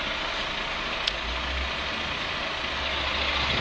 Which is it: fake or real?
real